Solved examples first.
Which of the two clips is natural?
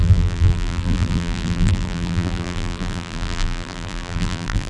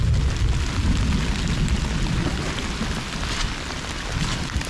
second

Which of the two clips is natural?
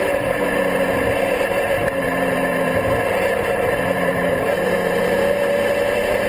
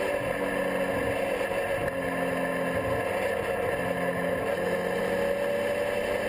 second